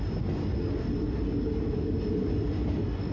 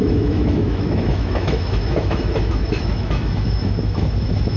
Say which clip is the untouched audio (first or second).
first